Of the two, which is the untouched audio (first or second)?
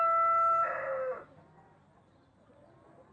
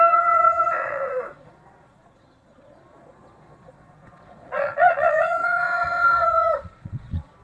first